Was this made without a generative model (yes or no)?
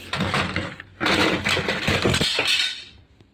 yes